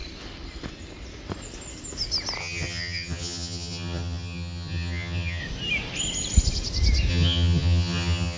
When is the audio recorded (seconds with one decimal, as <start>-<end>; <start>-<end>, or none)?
0.0-2.4; 5.4-7.1